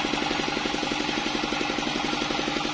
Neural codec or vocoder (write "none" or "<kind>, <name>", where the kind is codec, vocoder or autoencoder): none